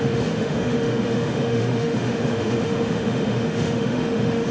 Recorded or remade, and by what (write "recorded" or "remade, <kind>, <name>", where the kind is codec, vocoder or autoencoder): remade, autoencoder, DAC-VAE